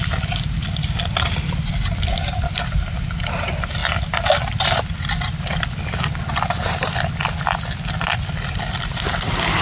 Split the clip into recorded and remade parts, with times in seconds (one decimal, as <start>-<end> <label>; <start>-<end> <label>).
0.0-9.6 recorded